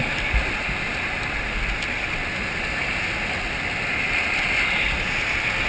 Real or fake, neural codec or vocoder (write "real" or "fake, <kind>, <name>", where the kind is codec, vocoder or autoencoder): real